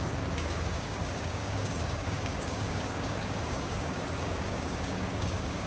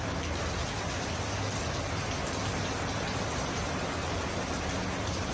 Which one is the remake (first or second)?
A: first